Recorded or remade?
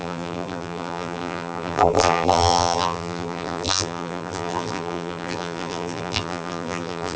remade